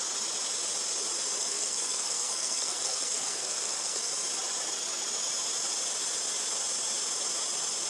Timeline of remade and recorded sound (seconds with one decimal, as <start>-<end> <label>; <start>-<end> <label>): 0.0-1.4 recorded; 1.4-4.1 remade; 4.1-7.9 recorded